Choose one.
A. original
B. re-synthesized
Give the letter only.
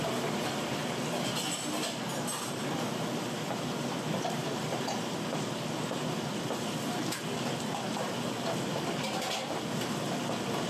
A